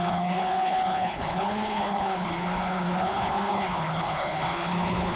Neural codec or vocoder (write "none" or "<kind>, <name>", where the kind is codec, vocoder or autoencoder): codec, HILCodec